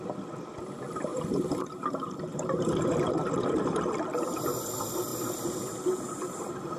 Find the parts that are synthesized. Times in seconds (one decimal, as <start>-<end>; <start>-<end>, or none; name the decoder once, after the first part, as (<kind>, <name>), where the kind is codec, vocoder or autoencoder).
1.1-4.5 (vocoder, BigVGAN v2)